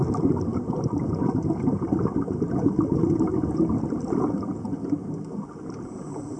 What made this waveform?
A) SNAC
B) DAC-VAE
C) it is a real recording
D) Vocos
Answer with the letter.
C